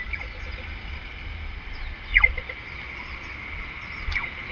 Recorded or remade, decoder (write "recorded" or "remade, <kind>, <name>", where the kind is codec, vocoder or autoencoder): recorded